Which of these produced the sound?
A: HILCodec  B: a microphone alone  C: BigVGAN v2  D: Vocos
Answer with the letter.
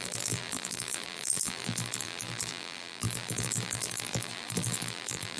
C